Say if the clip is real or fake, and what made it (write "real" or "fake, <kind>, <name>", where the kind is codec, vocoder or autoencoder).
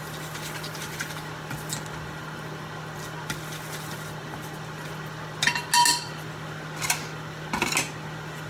real